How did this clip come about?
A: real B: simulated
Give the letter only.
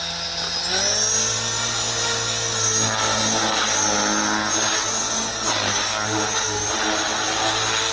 A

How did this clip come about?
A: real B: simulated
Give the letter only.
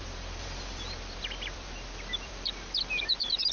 B